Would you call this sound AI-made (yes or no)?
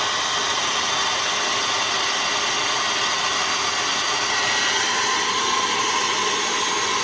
no